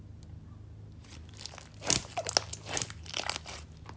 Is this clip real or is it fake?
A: real